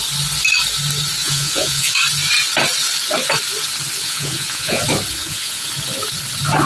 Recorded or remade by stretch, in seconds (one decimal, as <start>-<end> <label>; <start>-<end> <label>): 0.0-1.2 recorded; 1.2-2.0 remade; 2.0-4.0 recorded; 4.0-4.8 remade; 4.8-5.2 recorded; 5.2-5.7 remade; 5.7-6.7 recorded